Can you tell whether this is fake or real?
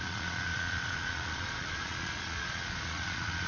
fake